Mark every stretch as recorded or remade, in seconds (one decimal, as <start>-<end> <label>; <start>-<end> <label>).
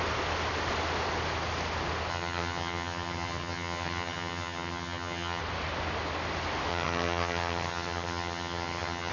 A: 0.0-2.1 recorded; 2.1-5.4 remade; 5.4-6.7 recorded; 6.7-9.1 remade